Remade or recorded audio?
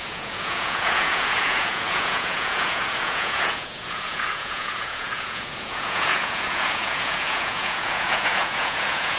remade